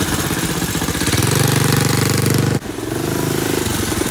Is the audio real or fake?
real